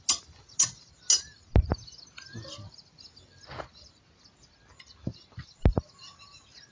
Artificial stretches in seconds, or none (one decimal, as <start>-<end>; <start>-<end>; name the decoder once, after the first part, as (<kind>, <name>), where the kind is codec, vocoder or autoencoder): none